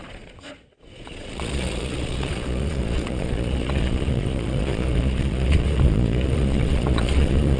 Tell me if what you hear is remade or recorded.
remade